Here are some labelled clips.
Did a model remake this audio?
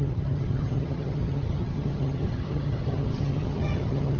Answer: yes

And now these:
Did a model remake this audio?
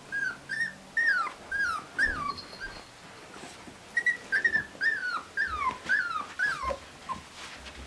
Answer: no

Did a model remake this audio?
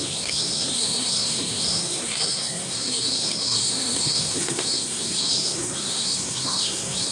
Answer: yes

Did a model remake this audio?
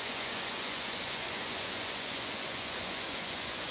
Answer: yes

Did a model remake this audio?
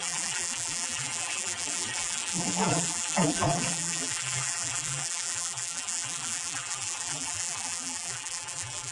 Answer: yes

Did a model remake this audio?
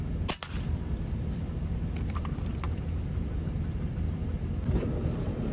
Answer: no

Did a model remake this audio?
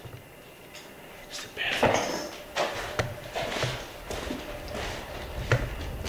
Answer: no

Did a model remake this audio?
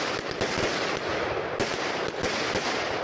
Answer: no